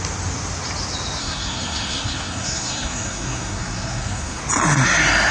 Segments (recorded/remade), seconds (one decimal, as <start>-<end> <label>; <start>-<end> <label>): 0.0-1.2 recorded; 1.2-4.4 remade; 4.4-5.3 recorded